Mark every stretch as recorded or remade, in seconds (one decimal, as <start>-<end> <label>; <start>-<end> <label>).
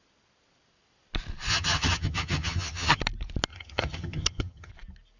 0.0-1.5 recorded; 1.5-3.0 remade; 3.0-3.5 recorded; 3.5-4.7 remade; 4.7-5.2 recorded